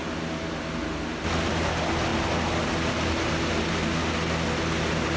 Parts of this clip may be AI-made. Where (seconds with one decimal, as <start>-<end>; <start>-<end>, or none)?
none